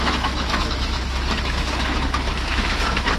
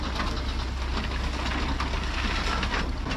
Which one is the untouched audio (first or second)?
second